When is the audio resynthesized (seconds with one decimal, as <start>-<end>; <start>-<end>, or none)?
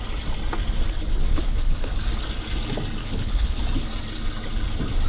1.3-1.9; 3.0-3.6